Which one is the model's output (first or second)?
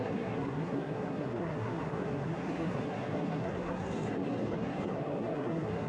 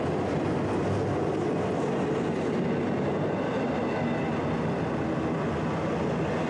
first